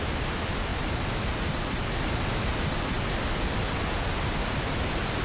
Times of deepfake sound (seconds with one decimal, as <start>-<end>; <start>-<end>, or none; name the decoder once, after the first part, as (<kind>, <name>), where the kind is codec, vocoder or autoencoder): none